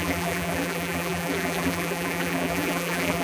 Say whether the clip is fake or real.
fake